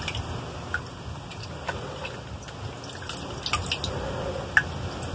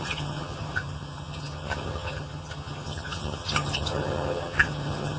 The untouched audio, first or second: first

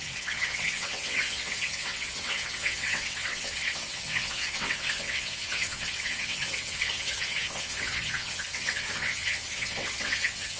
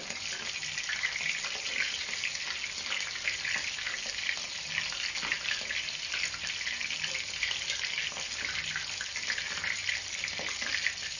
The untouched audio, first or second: second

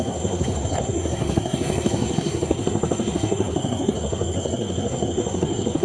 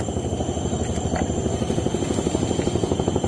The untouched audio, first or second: second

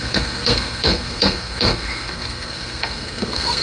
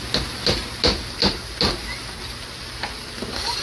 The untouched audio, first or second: second